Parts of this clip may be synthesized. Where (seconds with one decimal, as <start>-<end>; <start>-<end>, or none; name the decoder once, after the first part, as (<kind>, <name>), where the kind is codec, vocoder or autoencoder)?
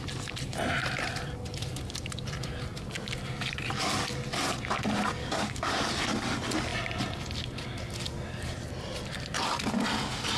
5.2-5.9 (codec, DAC)